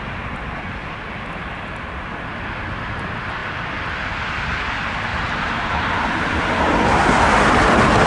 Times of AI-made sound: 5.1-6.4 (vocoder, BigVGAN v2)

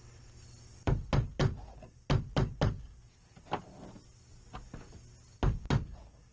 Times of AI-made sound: 0.0-0.9 (vocoder, BigVGAN v2)

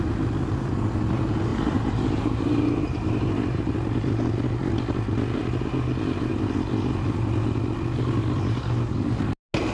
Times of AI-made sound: 1.5-3.7 (vocoder, BigVGAN v2)

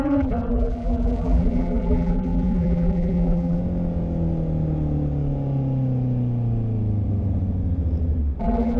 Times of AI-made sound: 0.0-3.6 (vocoder, BigVGAN v2); 8.4-8.8

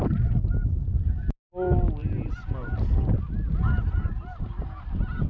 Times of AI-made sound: 2.0-2.7 (vocoder, BigVGAN v2); 3.8-5.3

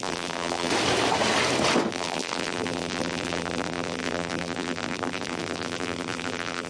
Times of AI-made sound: 0.0-0.7 (vocoder, BigVGAN v2); 1.9-6.7

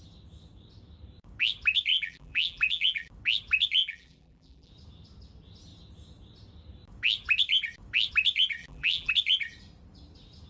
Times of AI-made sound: 1.9-3.1 (vocoder, BigVGAN v2); 3.8-4.7; 8.6-9.1